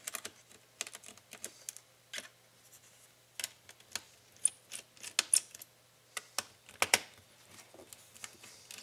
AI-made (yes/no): no